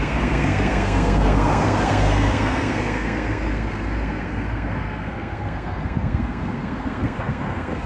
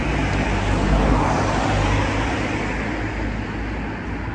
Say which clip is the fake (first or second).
first